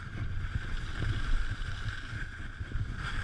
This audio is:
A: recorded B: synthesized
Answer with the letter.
A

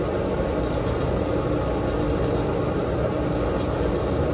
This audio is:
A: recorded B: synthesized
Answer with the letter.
A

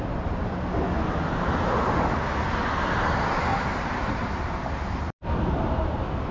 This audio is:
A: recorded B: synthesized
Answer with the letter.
A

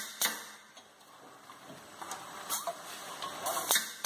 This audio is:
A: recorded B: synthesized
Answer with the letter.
A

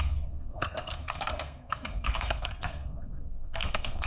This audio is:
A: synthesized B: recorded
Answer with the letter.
A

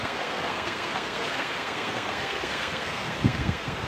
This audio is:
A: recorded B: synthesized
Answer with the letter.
B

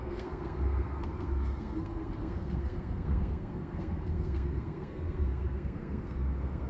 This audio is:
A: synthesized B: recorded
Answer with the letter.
A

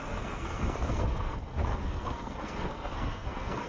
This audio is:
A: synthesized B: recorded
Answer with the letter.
A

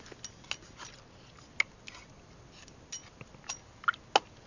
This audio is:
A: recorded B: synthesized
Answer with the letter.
A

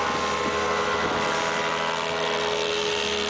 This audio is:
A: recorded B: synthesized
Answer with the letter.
A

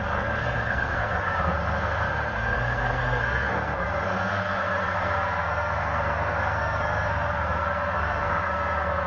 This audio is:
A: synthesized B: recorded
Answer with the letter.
A